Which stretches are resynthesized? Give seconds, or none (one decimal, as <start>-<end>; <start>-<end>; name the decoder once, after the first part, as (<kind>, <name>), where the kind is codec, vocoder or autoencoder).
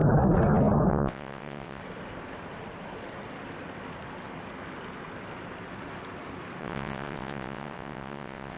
0.9-1.8 (vocoder, WaveNeXt); 6.6-8.6